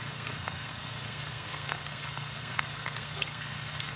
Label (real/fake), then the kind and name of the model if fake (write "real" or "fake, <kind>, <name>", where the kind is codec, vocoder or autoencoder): fake, codec, SNAC